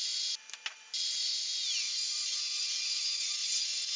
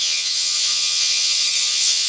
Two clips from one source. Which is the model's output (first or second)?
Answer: second